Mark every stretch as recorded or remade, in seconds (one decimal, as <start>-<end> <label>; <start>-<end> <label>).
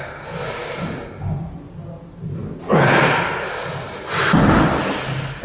0.0-5.4 recorded